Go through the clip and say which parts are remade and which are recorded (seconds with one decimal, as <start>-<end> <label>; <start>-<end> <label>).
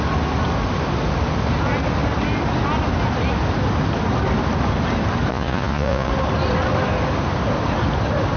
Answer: 0.0-5.3 recorded; 5.3-6.1 remade; 6.1-8.4 recorded